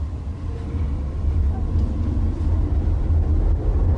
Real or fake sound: real